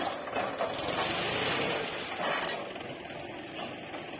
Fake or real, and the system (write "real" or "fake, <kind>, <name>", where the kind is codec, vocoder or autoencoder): real